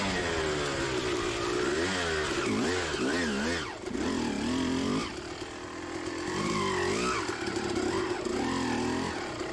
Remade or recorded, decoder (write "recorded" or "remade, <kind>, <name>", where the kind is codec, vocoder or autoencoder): recorded